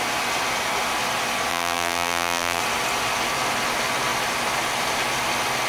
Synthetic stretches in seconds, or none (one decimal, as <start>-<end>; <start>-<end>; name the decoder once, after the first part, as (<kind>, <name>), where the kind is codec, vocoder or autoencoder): 1.5-2.6 (vocoder, BigVGAN v2)